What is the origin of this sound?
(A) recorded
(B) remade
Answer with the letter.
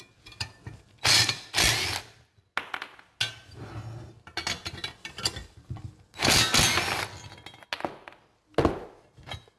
A